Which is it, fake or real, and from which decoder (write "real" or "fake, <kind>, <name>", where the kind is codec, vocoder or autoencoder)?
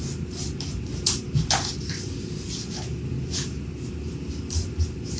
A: real